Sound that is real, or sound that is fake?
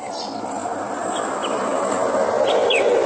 real